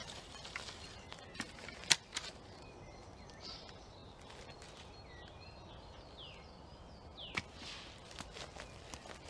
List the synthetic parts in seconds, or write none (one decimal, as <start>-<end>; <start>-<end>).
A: none